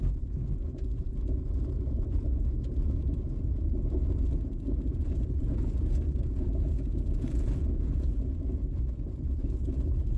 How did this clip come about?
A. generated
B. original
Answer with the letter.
A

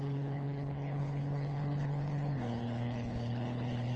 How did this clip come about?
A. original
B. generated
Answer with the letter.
B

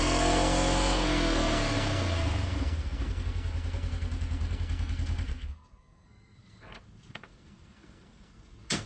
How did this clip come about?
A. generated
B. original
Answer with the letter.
A